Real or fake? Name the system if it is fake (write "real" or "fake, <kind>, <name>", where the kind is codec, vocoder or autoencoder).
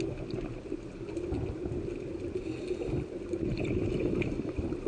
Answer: real